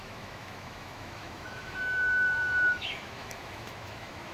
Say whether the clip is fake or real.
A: fake